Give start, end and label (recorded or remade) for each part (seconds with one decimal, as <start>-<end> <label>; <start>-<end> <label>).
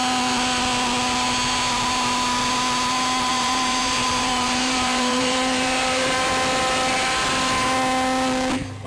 0.0-3.3 recorded; 3.3-6.3 remade; 6.3-8.9 recorded